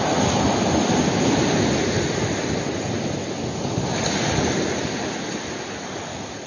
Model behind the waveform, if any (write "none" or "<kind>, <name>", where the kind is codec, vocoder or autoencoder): none